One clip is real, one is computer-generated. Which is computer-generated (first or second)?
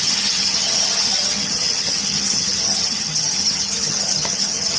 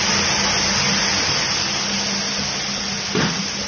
first